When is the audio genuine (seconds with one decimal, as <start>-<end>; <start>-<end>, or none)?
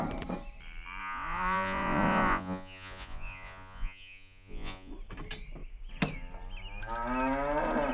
0.0-1.0; 4.9-7.9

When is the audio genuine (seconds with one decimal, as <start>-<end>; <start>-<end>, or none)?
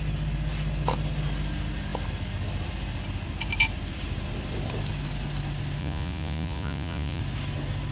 0.0-5.8; 7.2-7.9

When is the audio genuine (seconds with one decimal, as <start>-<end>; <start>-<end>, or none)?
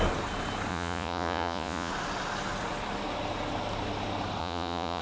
0.0-0.7; 1.9-4.4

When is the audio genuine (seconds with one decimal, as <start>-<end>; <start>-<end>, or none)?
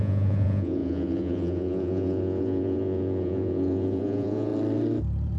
4.5-5.4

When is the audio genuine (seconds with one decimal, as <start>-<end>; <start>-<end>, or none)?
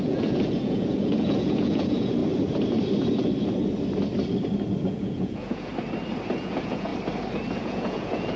2.2-4.8; 5.7-6.4; 6.9-7.6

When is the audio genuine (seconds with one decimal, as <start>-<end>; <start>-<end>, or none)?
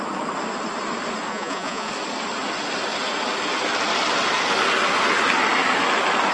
0.0-1.3; 1.9-6.3